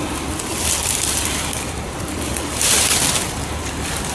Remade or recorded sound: remade